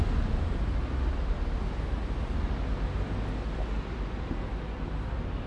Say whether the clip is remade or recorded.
recorded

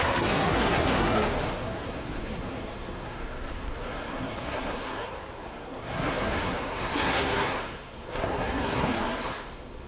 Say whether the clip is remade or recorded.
remade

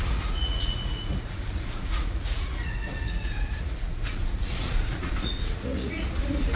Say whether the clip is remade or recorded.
remade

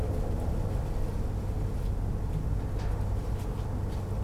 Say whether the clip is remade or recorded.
recorded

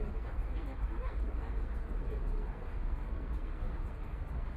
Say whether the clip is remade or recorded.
remade